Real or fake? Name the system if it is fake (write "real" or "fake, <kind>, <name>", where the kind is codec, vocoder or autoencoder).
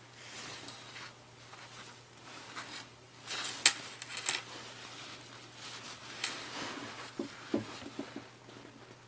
real